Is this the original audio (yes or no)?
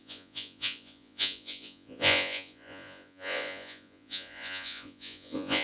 no